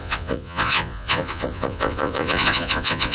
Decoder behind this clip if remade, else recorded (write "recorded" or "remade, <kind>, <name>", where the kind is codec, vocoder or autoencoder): remade, vocoder, Vocos